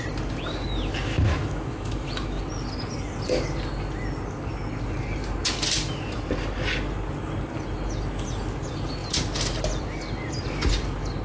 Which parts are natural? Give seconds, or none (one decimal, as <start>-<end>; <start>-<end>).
0.0-1.1; 2.4-11.2